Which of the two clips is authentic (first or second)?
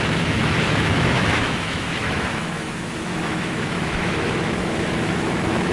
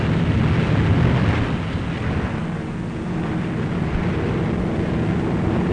second